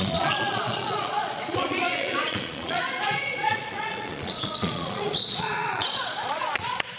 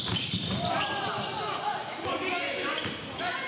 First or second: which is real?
second